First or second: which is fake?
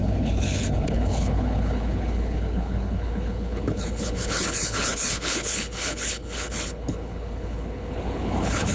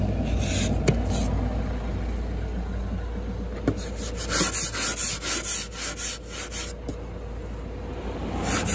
first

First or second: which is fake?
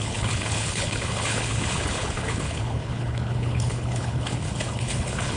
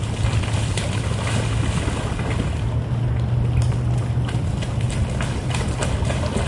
first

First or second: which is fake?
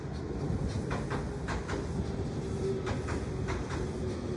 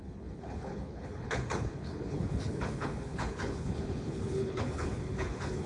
second